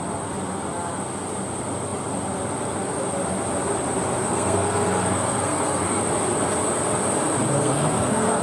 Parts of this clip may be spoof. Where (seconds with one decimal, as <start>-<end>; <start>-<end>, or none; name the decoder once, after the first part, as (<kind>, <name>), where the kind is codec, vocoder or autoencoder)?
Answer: 4.2-6.0 (codec, SNAC); 7.5-8.4